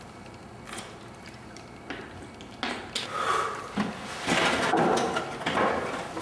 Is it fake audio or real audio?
real